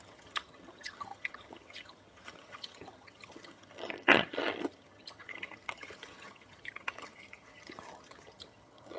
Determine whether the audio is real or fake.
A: fake